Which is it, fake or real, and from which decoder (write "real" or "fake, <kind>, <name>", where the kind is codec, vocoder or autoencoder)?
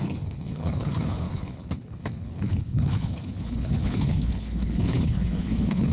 fake, codec, HILCodec